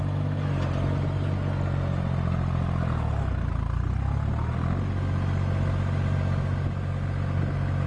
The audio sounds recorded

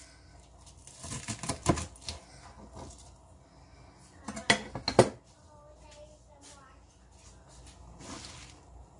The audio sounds recorded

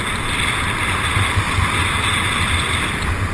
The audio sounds recorded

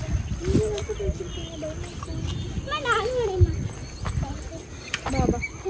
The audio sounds recorded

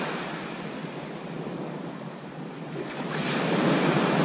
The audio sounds recorded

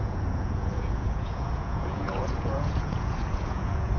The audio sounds remade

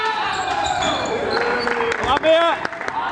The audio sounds recorded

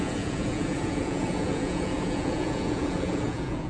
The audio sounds remade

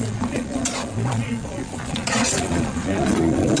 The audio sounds remade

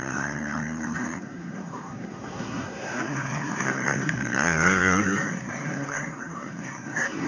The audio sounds remade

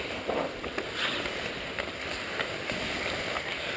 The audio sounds recorded